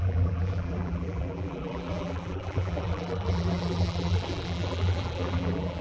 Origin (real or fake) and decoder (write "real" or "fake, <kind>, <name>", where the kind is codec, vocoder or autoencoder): fake, vocoder, BigVGAN v2